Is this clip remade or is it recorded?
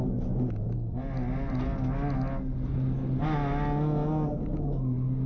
recorded